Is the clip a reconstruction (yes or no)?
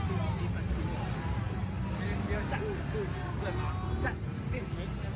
no